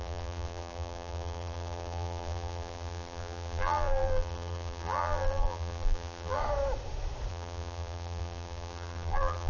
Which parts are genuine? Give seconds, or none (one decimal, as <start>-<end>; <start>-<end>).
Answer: 6.4-7.3